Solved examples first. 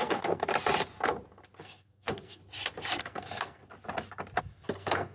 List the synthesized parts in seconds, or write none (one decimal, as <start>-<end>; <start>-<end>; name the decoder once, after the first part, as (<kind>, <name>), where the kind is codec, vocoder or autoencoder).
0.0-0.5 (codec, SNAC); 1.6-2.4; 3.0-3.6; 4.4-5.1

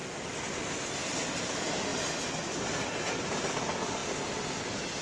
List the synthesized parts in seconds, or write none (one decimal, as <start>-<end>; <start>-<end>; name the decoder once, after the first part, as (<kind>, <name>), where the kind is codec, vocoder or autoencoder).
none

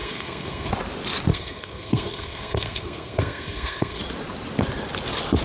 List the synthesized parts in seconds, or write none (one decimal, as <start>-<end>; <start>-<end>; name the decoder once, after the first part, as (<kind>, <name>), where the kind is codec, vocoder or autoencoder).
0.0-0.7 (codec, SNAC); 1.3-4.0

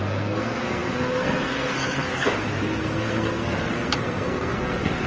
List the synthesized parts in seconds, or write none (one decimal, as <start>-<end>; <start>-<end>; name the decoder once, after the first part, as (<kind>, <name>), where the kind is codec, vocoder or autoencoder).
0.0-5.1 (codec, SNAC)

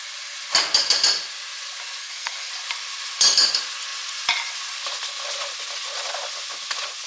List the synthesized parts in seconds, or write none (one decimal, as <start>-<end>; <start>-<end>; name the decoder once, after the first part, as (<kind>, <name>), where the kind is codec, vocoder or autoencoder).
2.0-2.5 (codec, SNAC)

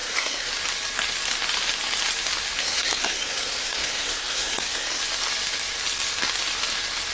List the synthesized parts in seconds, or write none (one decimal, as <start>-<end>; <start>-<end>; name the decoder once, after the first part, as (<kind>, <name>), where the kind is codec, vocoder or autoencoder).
0.0-0.5 (codec, SNAC); 2.6-5.0